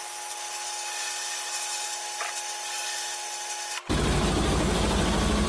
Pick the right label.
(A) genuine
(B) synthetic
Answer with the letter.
A